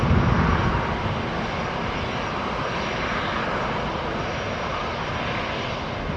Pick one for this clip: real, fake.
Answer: real